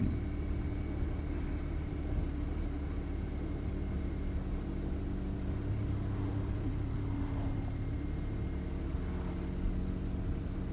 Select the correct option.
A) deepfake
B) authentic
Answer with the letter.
B